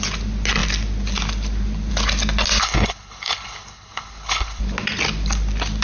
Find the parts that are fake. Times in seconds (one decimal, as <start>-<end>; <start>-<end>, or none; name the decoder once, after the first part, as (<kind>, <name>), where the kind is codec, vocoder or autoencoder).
2.6-4.6 (codec, HILCodec)